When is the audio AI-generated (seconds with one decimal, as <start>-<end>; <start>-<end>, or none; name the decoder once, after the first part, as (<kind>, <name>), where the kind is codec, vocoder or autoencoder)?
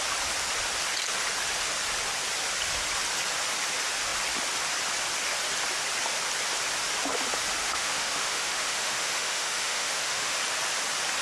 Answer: 7.6-10.4 (autoencoder, DAC-VAE)